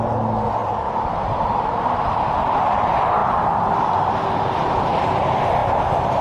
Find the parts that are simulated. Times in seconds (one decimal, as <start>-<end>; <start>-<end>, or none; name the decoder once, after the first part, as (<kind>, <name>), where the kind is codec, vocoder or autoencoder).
0.6-1.8 (vocoder, BigVGAN v2); 3.2-3.7; 5.6-6.2